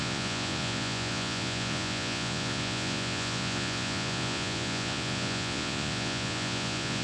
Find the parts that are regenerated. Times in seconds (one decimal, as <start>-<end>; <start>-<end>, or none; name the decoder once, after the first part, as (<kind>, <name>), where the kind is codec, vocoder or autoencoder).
0.0-7.0 (vocoder, Vocos)